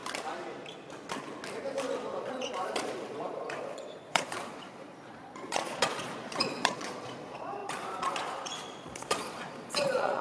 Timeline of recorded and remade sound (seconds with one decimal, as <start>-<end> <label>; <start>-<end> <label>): 0.0-2.2 recorded; 2.2-10.2 remade